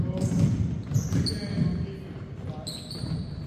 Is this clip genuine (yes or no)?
yes